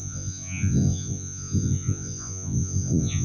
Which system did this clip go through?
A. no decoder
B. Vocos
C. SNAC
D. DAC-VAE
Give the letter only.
B